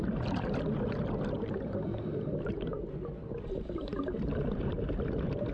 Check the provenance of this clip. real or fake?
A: real